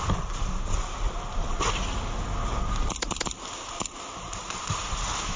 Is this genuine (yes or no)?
yes